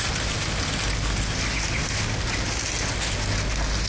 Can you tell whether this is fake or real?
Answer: real